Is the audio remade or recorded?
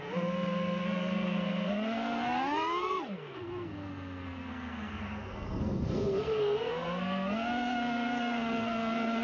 remade